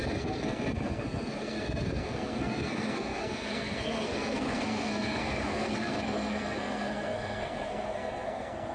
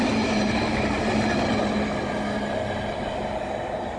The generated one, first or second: first